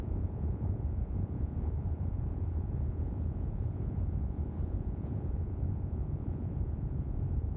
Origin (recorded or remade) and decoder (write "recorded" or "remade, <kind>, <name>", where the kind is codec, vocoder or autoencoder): remade, vocoder, Vocos